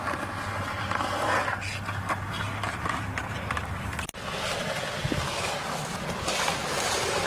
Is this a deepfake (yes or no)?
no